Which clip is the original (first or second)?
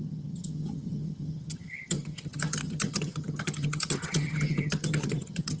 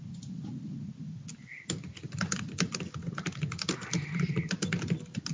second